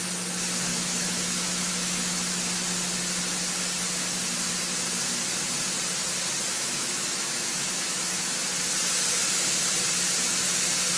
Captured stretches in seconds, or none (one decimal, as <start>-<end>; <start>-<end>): 0.0-0.7; 2.0-6.5; 8.3-11.0